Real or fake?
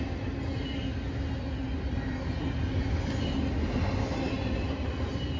real